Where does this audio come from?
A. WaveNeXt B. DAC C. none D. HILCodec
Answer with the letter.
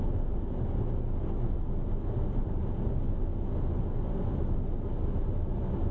C